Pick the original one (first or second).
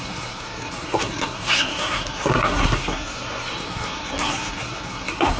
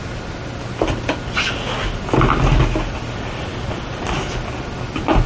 second